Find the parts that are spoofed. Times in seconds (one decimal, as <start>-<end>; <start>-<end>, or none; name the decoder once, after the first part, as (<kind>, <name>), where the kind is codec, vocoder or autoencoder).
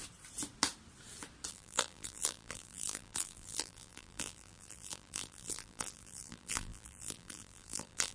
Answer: 1.5-8.1 (vocoder, BigVGAN v2)